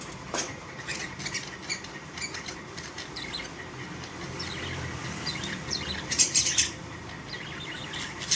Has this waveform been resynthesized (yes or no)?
yes